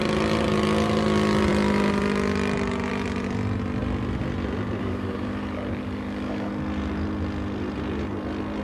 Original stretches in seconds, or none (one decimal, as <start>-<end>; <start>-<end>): 0.0-4.8; 6.5-8.6